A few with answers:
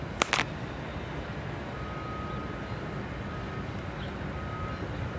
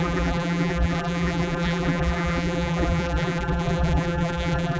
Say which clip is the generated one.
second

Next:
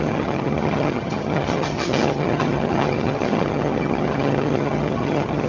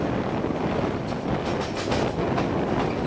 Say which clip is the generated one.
first